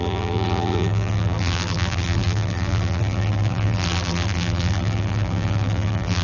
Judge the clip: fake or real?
fake